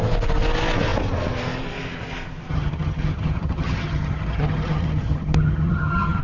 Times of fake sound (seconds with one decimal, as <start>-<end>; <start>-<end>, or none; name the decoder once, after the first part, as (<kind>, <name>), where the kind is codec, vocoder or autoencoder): 2.5-6.2 (vocoder, HiFi-GAN)